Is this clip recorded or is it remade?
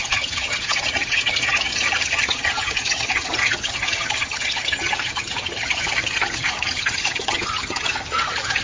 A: remade